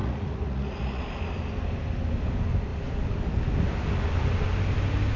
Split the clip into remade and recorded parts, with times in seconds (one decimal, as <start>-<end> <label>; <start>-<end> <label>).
0.0-1.0 remade; 1.0-5.2 recorded